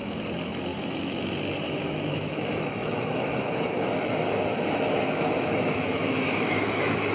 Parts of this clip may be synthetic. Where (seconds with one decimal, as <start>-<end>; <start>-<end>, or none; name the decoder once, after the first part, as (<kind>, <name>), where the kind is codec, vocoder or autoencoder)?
0.0-7.1 (autoencoder, DAC-VAE)